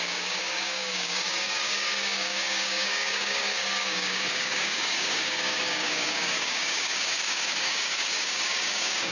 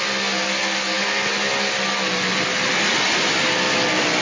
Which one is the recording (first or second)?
second